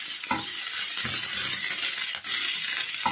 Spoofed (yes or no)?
no